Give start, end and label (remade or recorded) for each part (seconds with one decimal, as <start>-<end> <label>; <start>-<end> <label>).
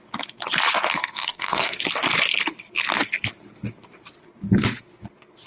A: 0.0-0.9 recorded; 0.9-1.8 remade; 1.8-5.5 recorded